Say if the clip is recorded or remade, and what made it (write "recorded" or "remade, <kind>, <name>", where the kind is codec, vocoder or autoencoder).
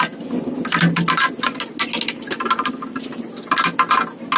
recorded